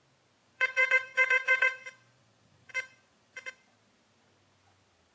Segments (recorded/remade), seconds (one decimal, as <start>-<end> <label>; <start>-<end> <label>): 0.0-0.4 recorded; 0.4-3.5 remade; 3.5-5.1 recorded